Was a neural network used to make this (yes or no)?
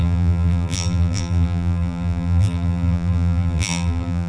yes